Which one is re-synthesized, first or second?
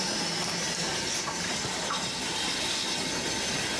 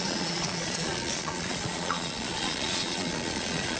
second